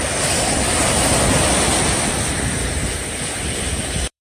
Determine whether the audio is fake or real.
fake